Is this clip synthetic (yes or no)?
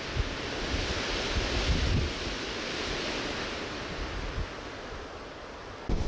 no